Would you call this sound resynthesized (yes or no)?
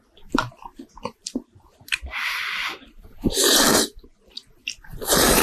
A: yes